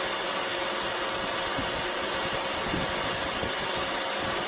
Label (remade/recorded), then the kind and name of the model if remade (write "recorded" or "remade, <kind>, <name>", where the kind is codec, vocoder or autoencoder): recorded